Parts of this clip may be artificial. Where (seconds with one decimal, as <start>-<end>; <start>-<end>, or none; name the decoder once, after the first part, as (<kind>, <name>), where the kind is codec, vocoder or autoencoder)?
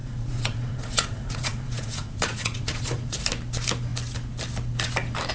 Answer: 0.0-3.2 (vocoder, Vocos)